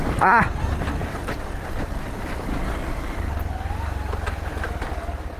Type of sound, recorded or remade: recorded